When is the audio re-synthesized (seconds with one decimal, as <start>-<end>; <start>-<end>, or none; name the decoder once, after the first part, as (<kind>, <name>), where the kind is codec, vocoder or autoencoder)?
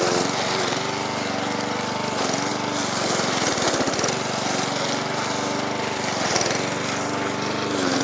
none